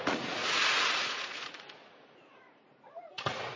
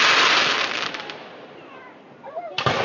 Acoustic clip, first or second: second